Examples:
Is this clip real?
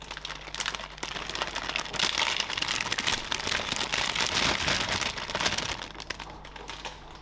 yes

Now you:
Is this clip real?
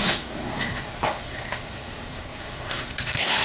no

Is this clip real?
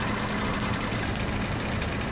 yes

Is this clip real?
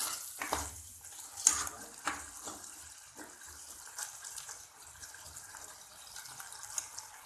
yes